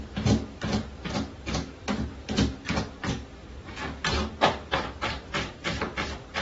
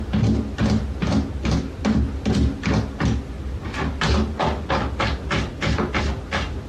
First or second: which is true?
second